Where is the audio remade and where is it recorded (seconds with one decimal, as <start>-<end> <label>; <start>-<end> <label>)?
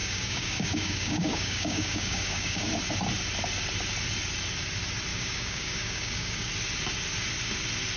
0.0-2.7 remade; 2.7-5.1 recorded; 5.1-6.5 remade; 6.5-8.0 recorded